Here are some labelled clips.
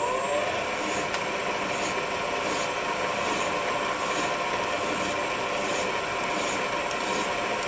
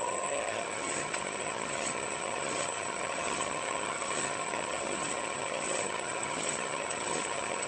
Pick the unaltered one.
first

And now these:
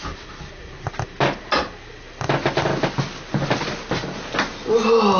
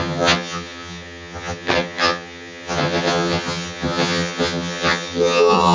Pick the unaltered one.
first